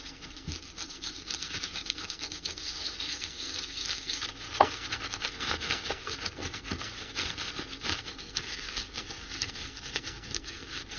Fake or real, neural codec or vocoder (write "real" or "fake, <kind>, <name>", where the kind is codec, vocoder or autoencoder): fake, codec, SNAC